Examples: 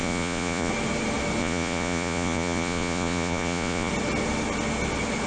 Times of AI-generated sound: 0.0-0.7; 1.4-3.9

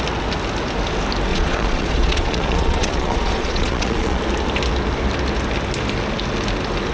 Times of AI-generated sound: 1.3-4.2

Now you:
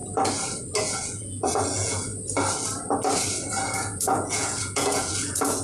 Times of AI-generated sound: 0.8-2.1; 3.6-5.6

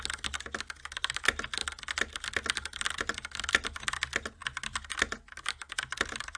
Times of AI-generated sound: none

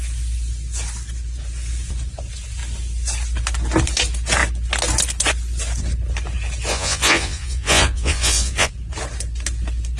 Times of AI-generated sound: 6.7-8.7

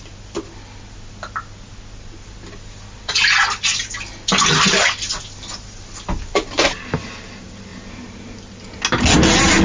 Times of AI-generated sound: none

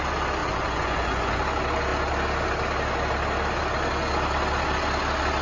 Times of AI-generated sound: 0.4-1.4